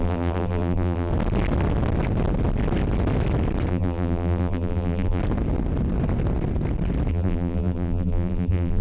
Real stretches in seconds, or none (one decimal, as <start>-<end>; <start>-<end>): 1.1-3.7; 5.2-7.1